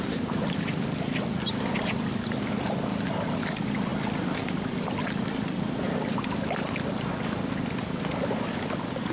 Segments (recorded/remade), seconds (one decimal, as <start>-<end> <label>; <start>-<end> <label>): 0.0-9.1 recorded